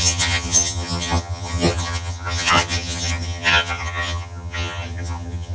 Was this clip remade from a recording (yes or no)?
yes